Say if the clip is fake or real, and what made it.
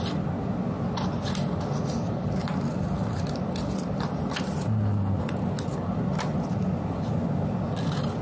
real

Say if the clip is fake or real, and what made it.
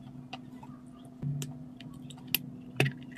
real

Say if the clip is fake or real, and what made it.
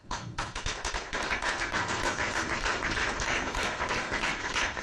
fake, codec, SNAC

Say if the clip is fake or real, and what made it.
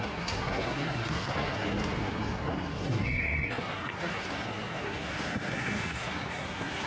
fake, codec, SNAC